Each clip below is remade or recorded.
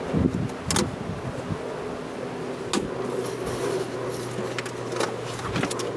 recorded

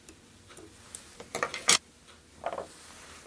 recorded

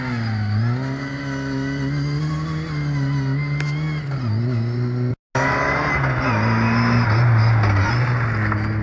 recorded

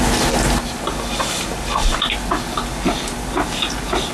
recorded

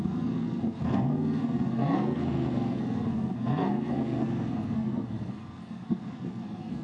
remade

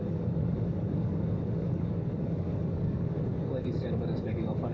remade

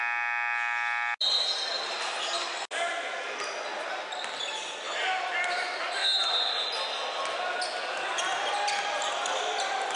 recorded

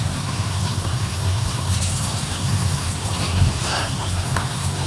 remade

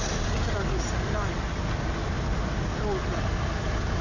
recorded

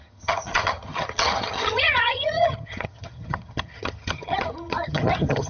remade